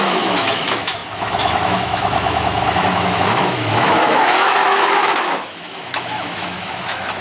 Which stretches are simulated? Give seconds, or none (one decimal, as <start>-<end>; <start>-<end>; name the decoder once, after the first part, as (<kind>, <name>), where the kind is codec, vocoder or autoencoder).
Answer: 0.0-7.2 (autoencoder, DAC-VAE)